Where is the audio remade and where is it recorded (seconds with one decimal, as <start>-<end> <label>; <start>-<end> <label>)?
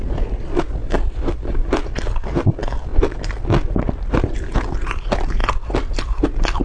0.0-2.9 recorded; 2.9-3.7 remade; 3.7-6.6 recorded